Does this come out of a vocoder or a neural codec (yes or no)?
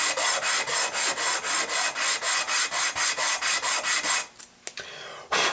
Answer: no